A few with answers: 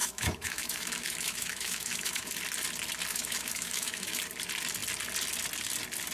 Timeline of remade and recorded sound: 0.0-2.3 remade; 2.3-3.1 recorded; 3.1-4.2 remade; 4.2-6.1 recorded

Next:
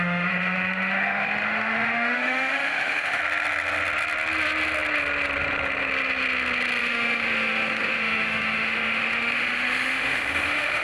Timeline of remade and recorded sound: 0.0-3.2 remade; 3.2-6.8 recorded; 6.8-10.8 remade

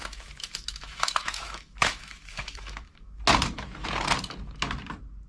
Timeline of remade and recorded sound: 0.0-3.2 remade; 3.2-5.3 recorded

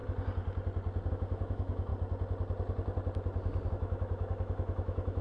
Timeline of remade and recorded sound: 0.0-1.1 recorded; 1.1-1.9 remade; 1.9-3.7 recorded; 3.7-5.2 remade

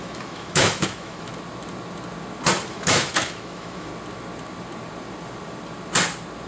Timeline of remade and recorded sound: 0.0-1.3 remade; 1.3-2.7 recorded; 2.7-3.9 remade; 3.9-6.5 recorded

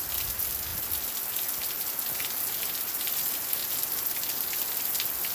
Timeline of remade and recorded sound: 0.0-5.3 recorded

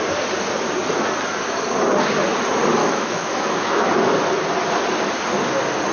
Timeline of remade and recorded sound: 0.0-2.8 recorded; 2.8-3.9 remade; 3.9-5.9 recorded

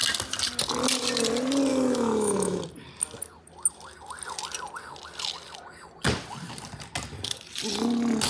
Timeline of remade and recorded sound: 0.0-1.7 recorded; 1.7-2.6 remade; 2.6-8.3 recorded